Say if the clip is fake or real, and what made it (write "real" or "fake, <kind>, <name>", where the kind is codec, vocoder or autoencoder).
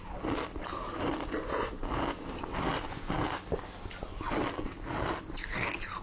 real